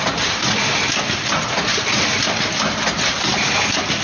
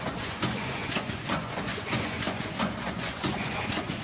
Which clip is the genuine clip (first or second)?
first